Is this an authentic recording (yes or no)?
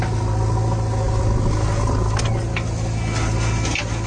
yes